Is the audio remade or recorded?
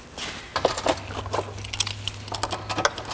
recorded